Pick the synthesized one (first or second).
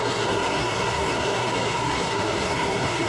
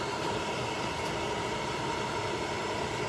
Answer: first